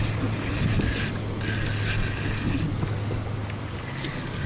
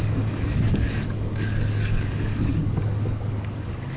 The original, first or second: first